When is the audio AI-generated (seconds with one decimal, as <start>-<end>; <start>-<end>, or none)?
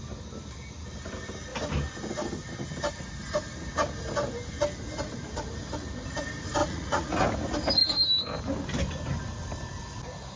6.6-7.2